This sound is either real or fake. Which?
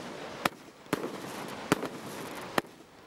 real